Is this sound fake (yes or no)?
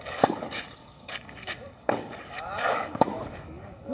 yes